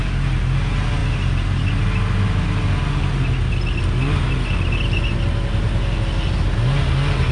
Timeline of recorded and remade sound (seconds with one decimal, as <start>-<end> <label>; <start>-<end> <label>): 0.0-7.3 recorded